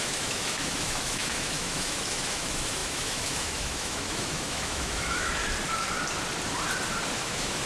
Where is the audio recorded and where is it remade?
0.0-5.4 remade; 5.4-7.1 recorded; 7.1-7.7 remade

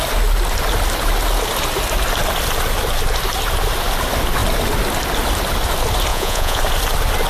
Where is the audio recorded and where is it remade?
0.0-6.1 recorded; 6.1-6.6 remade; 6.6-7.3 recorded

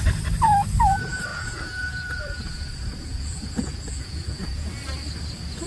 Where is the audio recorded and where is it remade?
0.0-1.3 recorded; 1.3-4.7 remade; 4.7-5.7 recorded

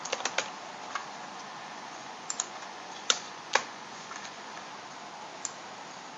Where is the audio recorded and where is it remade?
0.0-1.0 recorded; 1.0-4.7 remade; 4.7-6.2 recorded